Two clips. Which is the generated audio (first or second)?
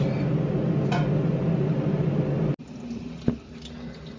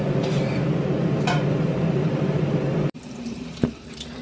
second